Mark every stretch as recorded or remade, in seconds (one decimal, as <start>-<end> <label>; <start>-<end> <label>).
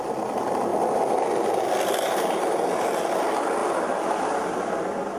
0.0-0.7 recorded; 0.7-1.6 remade; 1.6-5.2 recorded